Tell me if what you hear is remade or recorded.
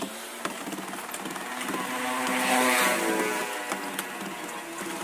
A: recorded